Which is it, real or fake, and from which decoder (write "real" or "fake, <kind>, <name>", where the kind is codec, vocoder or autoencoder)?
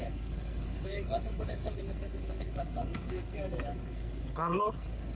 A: fake, codec, SNAC